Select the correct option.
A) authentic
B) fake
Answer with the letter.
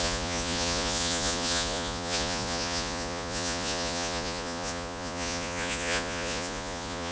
B